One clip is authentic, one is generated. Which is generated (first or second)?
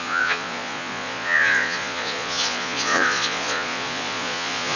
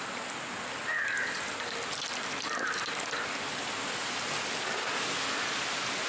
first